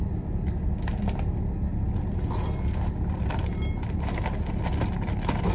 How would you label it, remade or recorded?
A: recorded